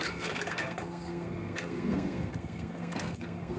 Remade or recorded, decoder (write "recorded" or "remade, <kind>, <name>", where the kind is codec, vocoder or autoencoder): remade, codec, SNAC